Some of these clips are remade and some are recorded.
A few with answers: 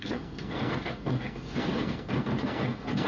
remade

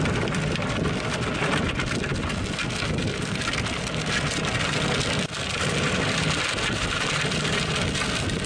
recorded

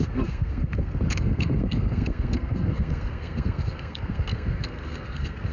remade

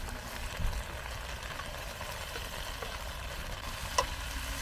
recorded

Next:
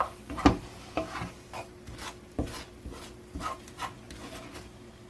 recorded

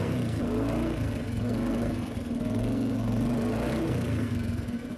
remade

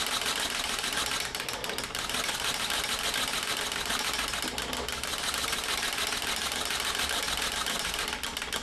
recorded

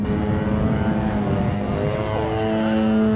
recorded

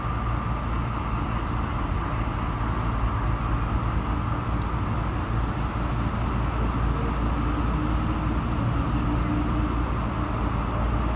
recorded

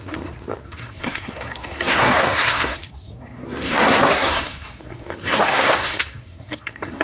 remade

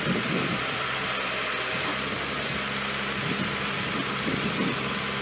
recorded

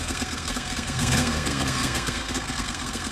remade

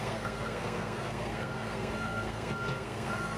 remade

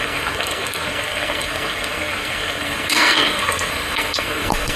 remade